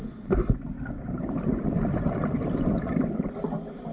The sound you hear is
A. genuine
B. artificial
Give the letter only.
A